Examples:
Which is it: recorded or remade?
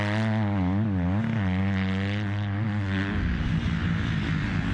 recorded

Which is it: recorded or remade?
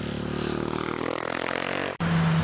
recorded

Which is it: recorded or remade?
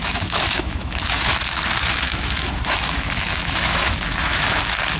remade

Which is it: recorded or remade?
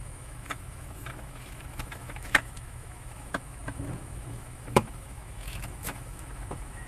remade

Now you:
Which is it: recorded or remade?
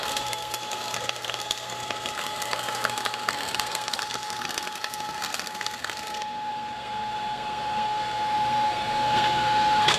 remade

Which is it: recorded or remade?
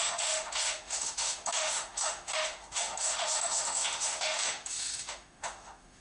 remade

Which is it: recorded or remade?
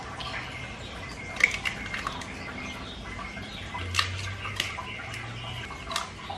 recorded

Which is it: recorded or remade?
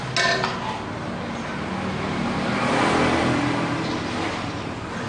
recorded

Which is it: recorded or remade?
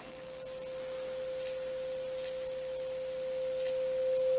recorded